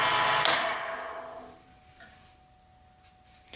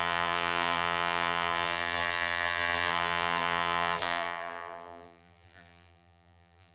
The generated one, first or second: second